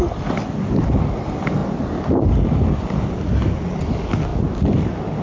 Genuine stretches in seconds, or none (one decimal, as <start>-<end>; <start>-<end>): 0.0-5.2